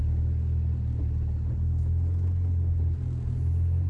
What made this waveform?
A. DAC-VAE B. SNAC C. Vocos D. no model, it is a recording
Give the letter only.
D